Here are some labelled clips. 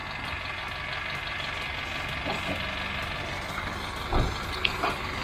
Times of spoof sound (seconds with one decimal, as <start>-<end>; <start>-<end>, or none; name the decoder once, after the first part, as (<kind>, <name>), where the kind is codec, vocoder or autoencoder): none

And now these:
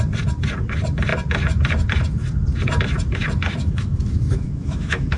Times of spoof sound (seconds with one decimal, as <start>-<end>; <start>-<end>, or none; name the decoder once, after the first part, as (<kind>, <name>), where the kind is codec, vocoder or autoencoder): 3.6-5.2 (autoencoder, DAC-VAE)

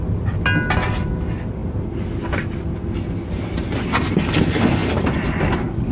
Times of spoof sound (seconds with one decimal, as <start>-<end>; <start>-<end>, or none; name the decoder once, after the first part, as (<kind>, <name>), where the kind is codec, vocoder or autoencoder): none

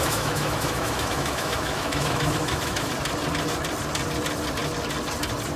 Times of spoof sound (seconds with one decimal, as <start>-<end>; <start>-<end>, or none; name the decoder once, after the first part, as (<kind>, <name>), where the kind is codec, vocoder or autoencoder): 0.0-2.9 (autoencoder, DAC-VAE)